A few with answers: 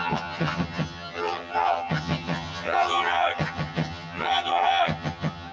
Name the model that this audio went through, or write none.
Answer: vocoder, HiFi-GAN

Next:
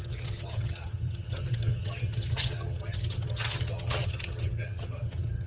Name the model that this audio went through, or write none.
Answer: vocoder, HiFi-GAN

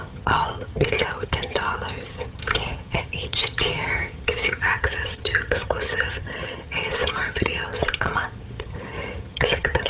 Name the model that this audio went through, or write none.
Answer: vocoder, HiFi-GAN